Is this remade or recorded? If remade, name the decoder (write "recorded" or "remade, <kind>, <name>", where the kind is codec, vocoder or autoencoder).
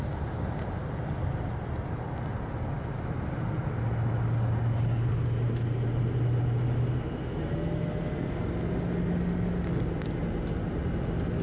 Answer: recorded